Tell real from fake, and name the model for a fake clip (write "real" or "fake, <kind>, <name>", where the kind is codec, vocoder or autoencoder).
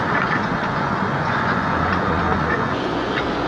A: fake, vocoder, Vocos